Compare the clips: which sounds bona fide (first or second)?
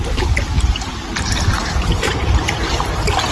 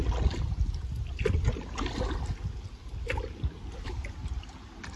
second